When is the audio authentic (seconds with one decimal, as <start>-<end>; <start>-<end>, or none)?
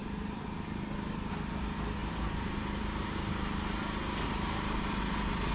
1.3-2.0; 5.0-5.5